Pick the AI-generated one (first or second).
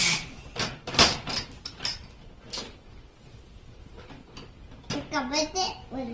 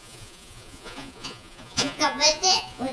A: second